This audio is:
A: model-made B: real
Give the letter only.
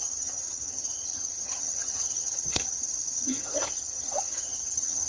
A